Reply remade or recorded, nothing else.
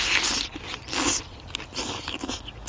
recorded